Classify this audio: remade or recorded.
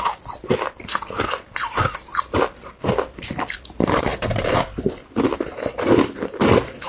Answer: recorded